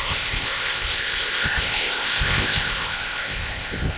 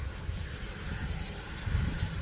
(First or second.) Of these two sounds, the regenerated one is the first